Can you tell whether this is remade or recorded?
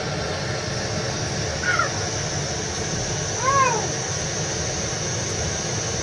recorded